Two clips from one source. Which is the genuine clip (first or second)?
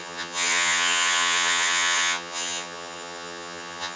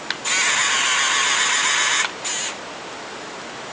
second